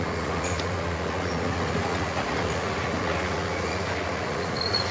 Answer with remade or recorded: remade